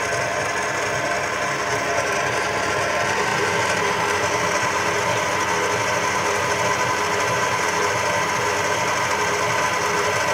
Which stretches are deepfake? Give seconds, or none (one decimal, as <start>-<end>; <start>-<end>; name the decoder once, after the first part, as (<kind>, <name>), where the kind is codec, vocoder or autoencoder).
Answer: none